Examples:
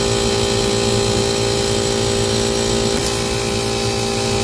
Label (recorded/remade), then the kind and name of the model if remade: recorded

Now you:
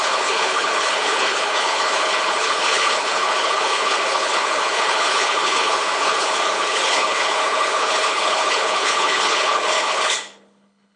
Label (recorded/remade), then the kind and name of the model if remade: remade, codec, HILCodec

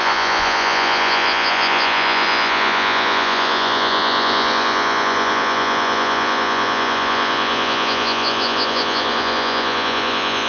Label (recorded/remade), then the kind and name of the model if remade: remade, vocoder, Vocos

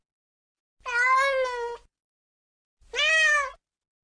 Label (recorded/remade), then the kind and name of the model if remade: recorded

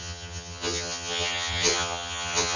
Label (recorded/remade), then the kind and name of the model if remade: remade, vocoder, HiFi-GAN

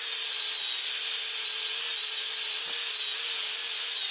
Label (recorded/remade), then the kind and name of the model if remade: recorded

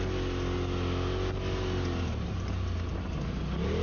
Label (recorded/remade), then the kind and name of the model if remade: recorded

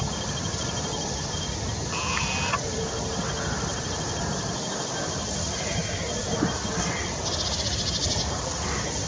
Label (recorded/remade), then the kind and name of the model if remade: recorded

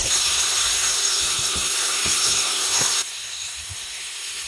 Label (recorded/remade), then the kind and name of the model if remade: remade, codec, SNAC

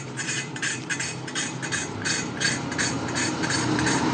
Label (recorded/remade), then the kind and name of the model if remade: remade, vocoder, BigVGAN v2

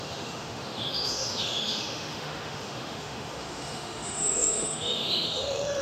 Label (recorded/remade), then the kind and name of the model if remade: remade, autoencoder, DAC-VAE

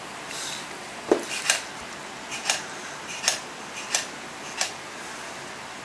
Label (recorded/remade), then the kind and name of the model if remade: recorded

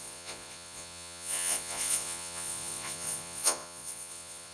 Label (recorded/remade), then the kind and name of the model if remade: remade, vocoder, Vocos